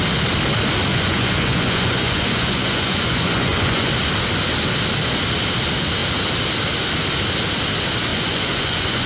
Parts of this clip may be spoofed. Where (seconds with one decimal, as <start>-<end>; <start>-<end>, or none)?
0.9-3.9; 8.1-9.1